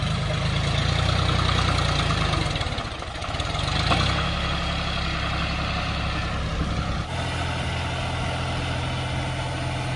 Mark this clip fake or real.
real